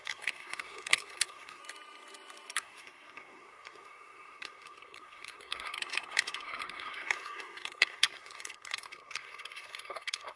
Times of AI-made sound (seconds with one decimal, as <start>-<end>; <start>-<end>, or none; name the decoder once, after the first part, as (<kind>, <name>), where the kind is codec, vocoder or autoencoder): 0.0-1.6 (codec, SNAC); 2.6-10.4